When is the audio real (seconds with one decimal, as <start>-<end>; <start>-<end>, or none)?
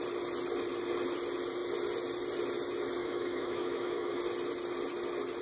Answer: 0.0-3.0; 4.2-5.4